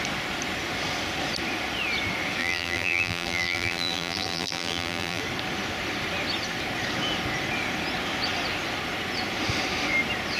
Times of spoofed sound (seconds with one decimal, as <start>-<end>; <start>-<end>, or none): 2.4-5.2